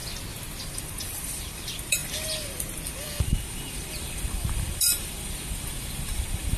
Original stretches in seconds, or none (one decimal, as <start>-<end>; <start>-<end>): 0.0-0.7